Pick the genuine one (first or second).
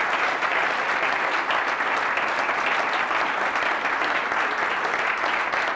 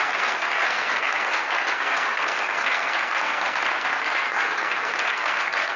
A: first